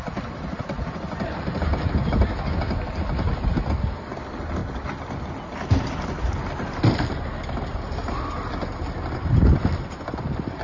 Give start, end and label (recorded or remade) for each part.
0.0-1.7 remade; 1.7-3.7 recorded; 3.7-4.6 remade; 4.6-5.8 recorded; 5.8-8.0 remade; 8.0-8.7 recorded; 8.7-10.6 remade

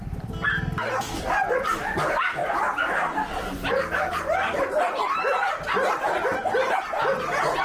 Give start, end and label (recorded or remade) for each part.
0.0-2.4 remade; 2.4-6.4 recorded; 6.4-7.6 remade

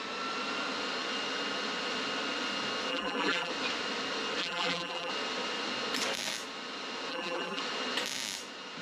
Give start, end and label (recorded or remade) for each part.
0.0-2.9 recorded; 2.9-3.5 remade; 3.5-4.4 recorded; 4.4-5.1 remade; 5.1-7.1 recorded; 7.1-7.6 remade; 7.6-8.8 recorded

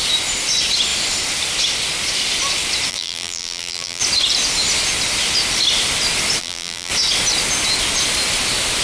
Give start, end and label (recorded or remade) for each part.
0.0-2.9 recorded; 2.9-4.0 remade; 4.0-6.4 recorded; 6.4-6.9 remade; 6.9-8.8 recorded